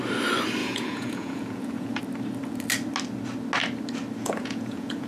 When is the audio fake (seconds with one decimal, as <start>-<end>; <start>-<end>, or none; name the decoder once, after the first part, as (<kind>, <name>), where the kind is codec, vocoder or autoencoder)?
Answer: 0.6-2.0 (vocoder, Vocos); 4.2-5.1